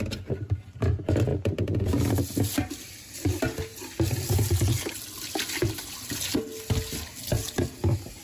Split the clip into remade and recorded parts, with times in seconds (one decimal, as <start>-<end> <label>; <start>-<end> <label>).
0.0-8.2 recorded